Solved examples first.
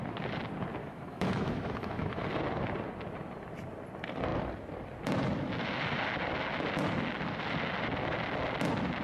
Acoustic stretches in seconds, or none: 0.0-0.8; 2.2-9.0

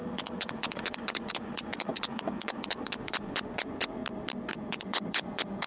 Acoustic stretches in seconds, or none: 4.0-4.5

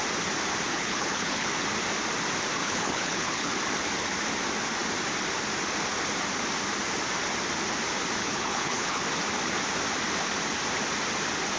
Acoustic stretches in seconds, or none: 0.0-0.7; 1.5-2.6; 3.5-8.2; 9.0-11.6

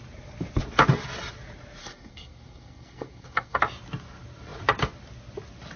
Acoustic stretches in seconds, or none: 0.0-1.8; 3.6-5.8

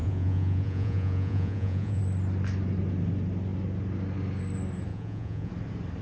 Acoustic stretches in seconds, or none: 2.0-4.9; 5.5-6.0